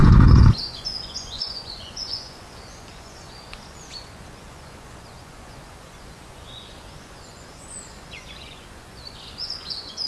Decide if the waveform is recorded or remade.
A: remade